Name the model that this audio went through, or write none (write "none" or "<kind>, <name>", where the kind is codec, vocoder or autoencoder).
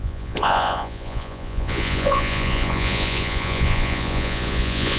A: vocoder, Vocos